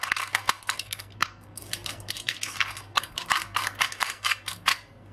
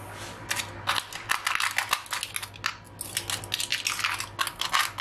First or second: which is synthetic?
first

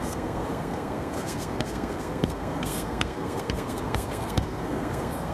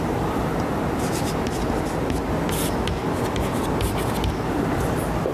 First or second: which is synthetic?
first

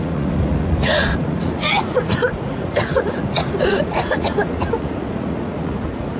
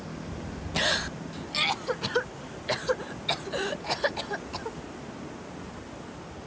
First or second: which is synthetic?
first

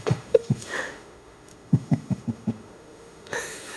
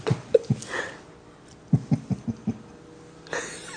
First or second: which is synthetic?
first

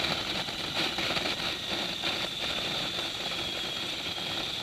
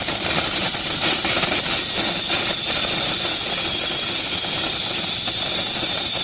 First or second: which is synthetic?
second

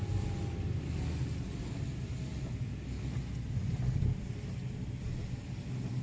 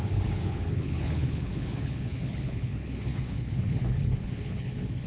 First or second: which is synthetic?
second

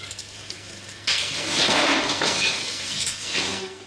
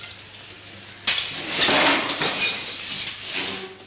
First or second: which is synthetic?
first